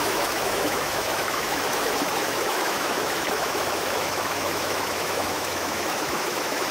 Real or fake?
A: fake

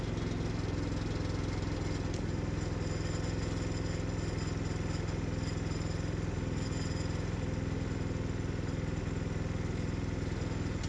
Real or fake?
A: real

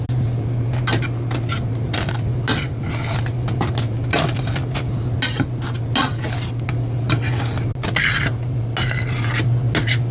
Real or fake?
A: real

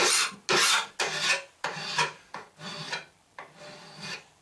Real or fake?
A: real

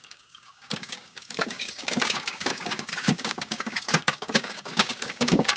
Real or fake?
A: fake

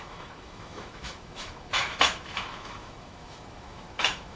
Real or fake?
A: fake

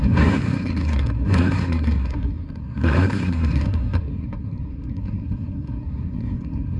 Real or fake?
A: fake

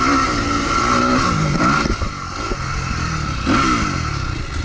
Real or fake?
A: real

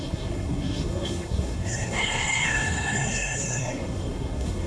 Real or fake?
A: fake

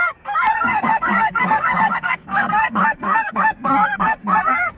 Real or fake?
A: fake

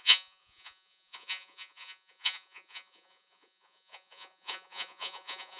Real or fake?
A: fake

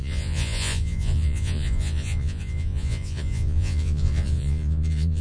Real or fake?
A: fake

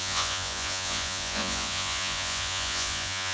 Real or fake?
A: fake